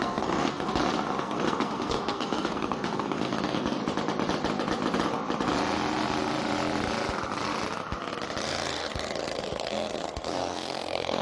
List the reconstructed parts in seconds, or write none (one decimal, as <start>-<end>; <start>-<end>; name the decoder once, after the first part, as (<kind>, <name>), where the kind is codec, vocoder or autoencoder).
0.0-0.7 (codec, SNAC); 1.2-3.8; 8.4-11.2